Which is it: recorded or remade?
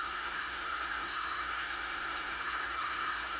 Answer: remade